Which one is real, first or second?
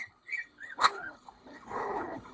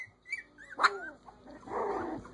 second